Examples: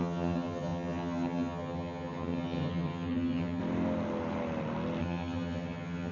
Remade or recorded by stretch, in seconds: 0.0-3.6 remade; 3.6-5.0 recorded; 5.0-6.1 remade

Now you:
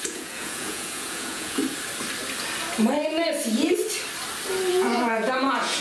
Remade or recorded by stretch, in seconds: 0.0-1.6 remade; 1.6-4.7 recorded; 4.7-5.8 remade

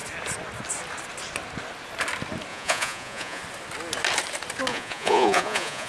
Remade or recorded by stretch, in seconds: 0.0-2.5 recorded; 2.5-3.4 remade; 3.4-4.7 recorded; 4.7-5.9 remade